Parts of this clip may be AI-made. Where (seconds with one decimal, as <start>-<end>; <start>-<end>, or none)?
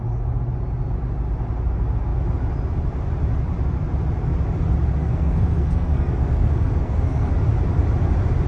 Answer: 5.0-7.3